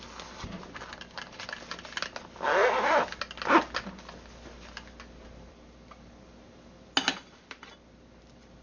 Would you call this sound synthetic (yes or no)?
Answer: no